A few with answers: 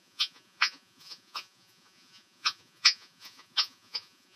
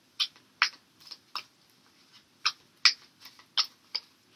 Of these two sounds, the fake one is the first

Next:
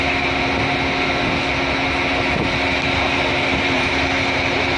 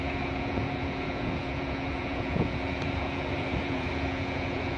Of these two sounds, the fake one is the second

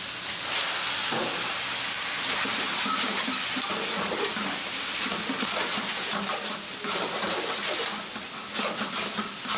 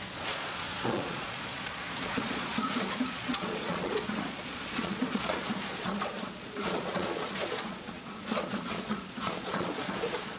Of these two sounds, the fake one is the second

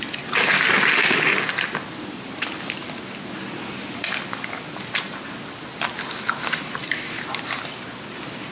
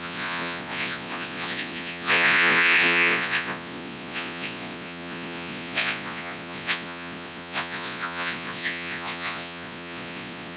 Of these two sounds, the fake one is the second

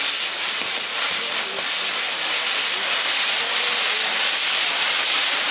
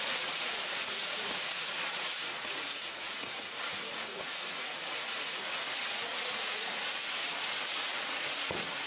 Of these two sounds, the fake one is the second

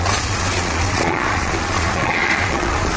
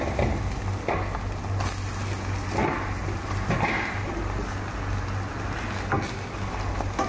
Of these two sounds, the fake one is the first